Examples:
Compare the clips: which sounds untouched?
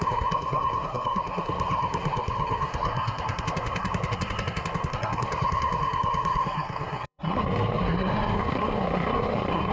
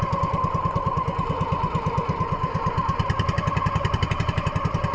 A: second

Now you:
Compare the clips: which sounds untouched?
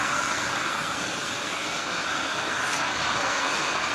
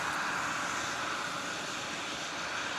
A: second